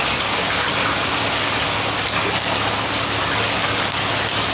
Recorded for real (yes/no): yes